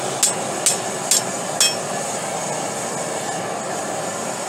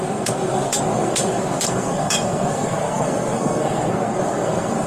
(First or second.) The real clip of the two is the first